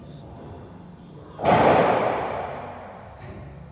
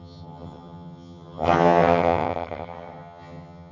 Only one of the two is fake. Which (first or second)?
second